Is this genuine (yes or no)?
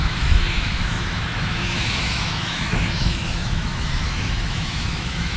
no